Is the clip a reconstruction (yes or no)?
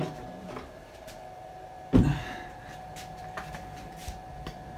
yes